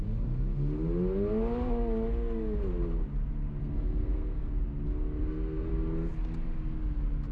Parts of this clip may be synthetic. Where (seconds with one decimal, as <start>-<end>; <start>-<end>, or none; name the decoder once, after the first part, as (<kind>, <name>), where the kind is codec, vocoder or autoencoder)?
3.6-4.6 (codec, SNAC); 5.2-5.7